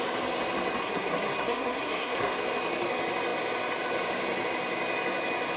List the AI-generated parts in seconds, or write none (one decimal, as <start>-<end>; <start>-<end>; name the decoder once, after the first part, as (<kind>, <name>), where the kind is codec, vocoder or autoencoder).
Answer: 0.8-2.3 (codec, SNAC)